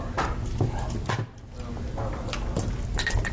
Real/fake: real